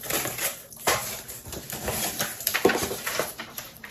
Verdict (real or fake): fake